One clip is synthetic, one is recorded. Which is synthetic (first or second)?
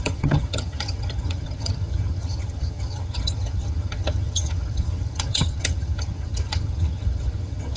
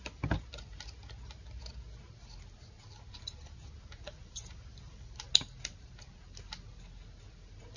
first